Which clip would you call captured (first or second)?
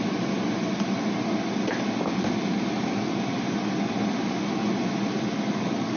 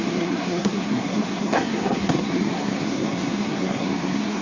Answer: first